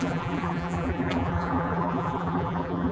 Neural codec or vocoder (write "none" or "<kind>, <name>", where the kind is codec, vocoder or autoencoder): vocoder, BigVGAN v2